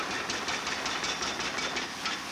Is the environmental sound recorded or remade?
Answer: recorded